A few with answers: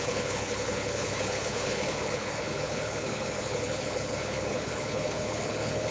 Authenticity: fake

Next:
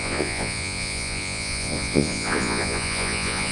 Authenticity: fake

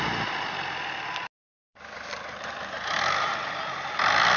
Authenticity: real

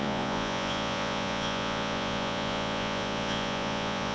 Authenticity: fake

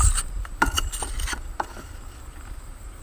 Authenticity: real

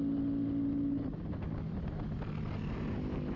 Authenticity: real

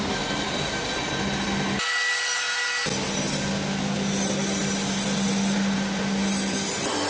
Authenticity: real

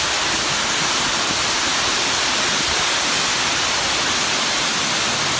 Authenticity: real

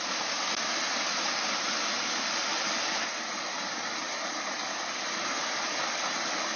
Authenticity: real